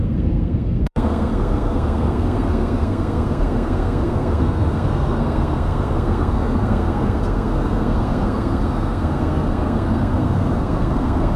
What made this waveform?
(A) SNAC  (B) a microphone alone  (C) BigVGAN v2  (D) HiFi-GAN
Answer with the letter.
A